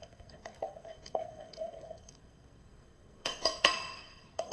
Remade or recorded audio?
remade